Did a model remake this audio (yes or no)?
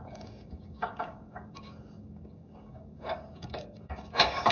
yes